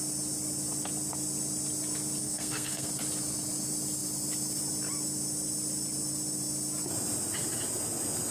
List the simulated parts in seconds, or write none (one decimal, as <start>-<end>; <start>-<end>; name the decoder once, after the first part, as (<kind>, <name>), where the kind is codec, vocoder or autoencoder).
2.2-2.9 (codec, SNAC)